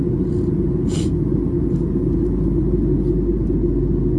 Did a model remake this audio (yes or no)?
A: no